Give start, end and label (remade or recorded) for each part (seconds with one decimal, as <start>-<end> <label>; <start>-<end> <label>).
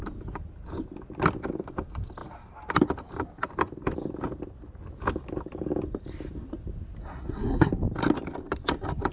0.0-7.0 recorded; 7.0-7.7 remade; 7.7-9.1 recorded